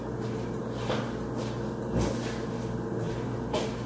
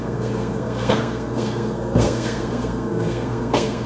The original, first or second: first